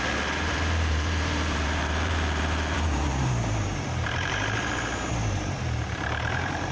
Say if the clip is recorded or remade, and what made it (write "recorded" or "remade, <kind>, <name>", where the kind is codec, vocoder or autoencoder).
remade, vocoder, BigVGAN v2